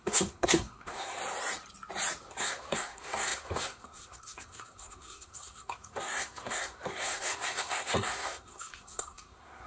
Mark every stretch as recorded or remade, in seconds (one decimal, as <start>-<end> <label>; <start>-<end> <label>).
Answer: 0.0-1.2 remade; 1.2-2.3 recorded; 2.3-9.7 remade